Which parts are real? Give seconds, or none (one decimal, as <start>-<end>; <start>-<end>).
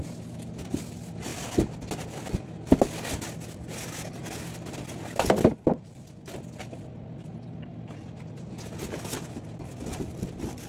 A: 0.0-10.7